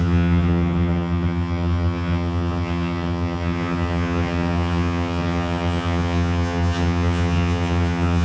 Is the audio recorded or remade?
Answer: remade